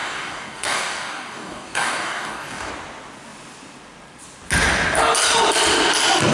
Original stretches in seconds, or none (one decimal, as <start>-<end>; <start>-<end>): 2.7-6.3